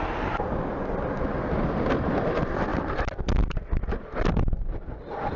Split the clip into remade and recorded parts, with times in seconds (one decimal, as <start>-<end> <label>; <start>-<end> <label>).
0.0-5.4 recorded